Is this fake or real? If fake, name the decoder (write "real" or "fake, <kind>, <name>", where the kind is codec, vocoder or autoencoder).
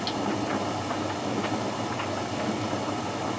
real